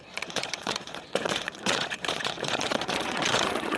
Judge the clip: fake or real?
fake